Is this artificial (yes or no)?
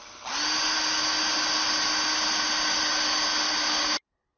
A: no